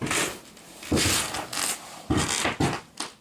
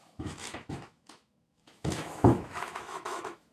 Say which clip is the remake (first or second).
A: second